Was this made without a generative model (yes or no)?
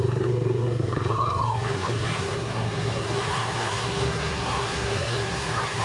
no